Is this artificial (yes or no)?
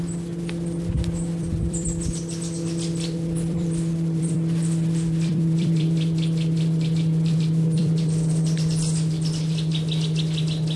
yes